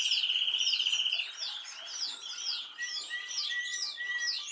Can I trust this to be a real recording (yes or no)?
yes